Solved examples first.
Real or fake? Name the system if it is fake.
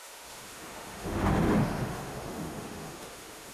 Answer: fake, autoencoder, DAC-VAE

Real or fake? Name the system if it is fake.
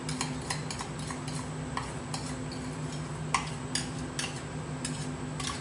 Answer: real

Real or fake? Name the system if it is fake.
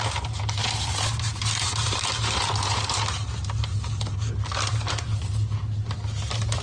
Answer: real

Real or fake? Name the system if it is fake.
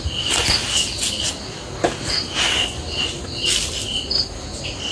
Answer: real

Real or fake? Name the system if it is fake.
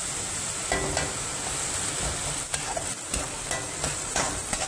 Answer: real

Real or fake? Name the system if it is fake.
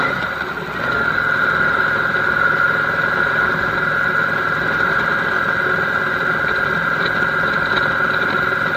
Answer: real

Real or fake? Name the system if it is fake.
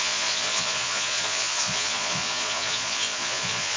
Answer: fake, vocoder, Vocos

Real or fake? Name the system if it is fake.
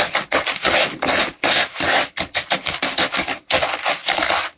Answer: real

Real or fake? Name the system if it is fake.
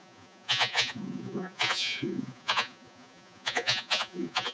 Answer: fake, vocoder, Vocos